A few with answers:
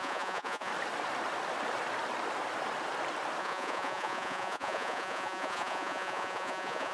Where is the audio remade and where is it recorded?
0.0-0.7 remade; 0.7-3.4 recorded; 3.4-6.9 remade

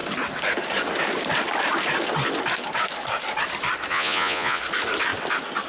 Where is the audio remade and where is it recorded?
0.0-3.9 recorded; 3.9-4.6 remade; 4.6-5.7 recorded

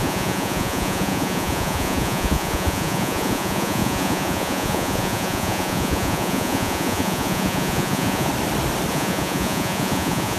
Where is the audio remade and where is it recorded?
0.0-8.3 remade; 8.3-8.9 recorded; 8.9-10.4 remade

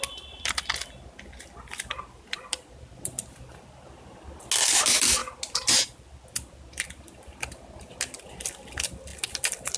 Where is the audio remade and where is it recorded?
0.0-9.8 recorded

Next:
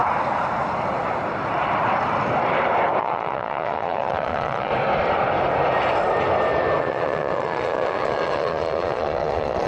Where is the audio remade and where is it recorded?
0.0-3.0 recorded; 3.0-4.7 remade; 4.7-6.8 recorded; 6.8-9.7 remade

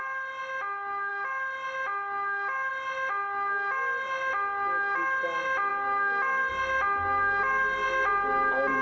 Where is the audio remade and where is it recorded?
0.0-8.8 recorded

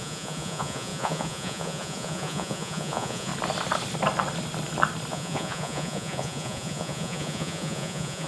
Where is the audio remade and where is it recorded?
0.0-3.3 remade; 3.3-5.1 recorded; 5.1-8.3 remade